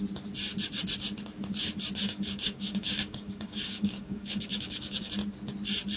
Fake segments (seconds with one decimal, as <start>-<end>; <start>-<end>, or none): 2.0-5.1